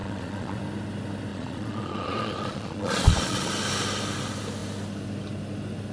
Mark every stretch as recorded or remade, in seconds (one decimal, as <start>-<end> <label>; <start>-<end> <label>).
0.0-0.6 remade; 0.6-1.3 recorded; 1.3-3.5 remade; 3.5-5.9 recorded